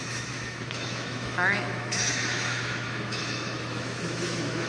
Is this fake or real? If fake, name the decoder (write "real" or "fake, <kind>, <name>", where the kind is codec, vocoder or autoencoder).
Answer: fake, autoencoder, DAC-VAE